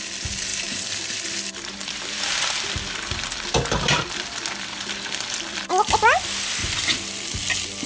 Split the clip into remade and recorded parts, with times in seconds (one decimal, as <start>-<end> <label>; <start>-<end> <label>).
0.0-0.5 recorded; 0.5-5.2 remade; 5.2-6.6 recorded; 6.6-7.4 remade; 7.4-7.9 recorded